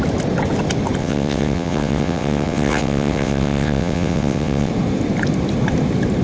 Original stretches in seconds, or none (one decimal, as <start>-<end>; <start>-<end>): 0.0-1.0; 4.7-6.2